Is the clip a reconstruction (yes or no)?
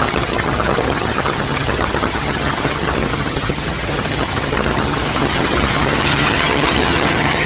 yes